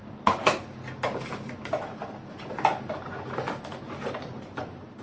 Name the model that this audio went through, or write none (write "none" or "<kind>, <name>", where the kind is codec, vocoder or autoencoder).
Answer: none